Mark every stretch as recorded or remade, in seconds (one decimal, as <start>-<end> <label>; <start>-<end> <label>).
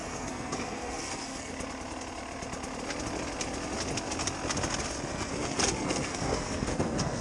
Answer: 0.0-1.5 remade; 1.5-5.1 recorded; 5.1-7.2 remade